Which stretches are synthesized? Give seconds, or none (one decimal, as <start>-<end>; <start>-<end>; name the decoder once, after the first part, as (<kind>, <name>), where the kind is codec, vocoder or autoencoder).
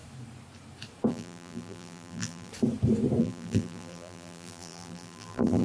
1.1-2.5 (vocoder, BigVGAN v2); 3.2-5.6